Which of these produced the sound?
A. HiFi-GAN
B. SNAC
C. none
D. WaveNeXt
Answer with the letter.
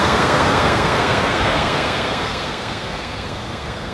B